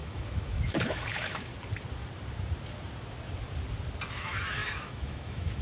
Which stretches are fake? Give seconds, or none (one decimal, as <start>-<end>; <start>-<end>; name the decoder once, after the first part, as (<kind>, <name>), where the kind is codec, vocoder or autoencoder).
0.0-1.5 (autoencoder, DAC-VAE); 4.1-5.6